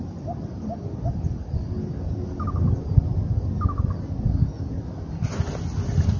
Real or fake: real